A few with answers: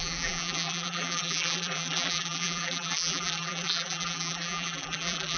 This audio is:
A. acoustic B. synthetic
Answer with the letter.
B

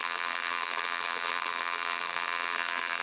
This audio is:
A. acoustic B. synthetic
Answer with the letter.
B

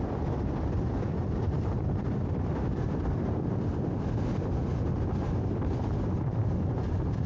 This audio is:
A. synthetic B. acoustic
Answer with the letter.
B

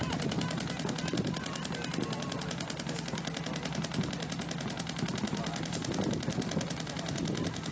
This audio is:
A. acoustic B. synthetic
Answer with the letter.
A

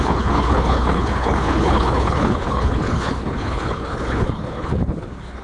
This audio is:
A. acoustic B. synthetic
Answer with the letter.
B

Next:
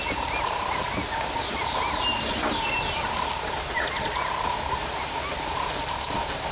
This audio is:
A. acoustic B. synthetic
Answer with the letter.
A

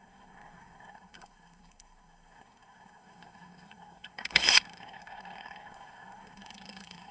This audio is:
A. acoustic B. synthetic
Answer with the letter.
B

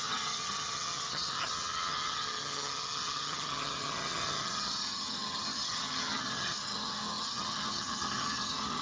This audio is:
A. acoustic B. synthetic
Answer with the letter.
B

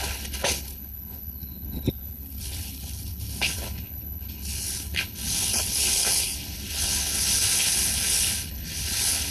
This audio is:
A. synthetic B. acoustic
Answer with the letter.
A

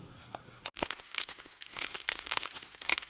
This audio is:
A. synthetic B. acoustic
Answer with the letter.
A